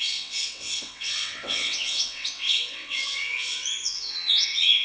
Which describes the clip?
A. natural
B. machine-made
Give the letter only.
B